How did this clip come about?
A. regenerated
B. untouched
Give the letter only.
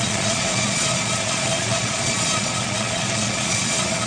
A